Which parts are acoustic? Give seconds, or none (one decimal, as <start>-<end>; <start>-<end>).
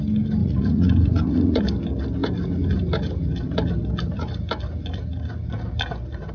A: 0.0-0.4; 1.6-6.3